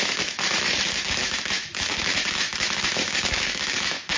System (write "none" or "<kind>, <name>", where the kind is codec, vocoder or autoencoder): autoencoder, DAC-VAE